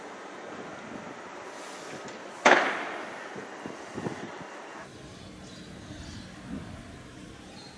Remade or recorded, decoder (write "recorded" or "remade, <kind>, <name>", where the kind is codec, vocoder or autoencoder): recorded